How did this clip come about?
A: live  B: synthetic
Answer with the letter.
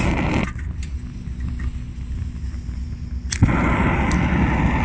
A